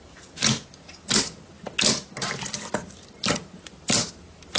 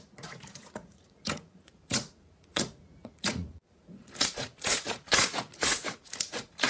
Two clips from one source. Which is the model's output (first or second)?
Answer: second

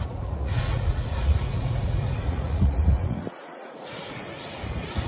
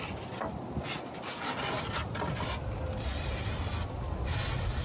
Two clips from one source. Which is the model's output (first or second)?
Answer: first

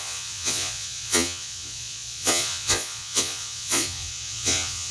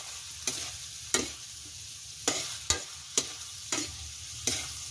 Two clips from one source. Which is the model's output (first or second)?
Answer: first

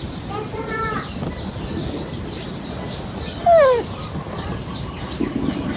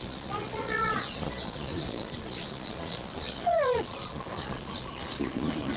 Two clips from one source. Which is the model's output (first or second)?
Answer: second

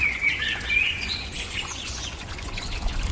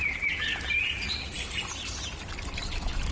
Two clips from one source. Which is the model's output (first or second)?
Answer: first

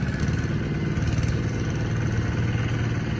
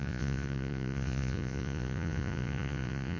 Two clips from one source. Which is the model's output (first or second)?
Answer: second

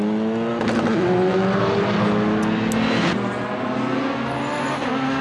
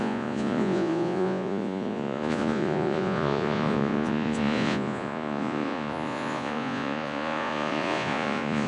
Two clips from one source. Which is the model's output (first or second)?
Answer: second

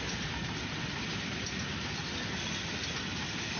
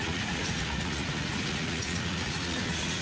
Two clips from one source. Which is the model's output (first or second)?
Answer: second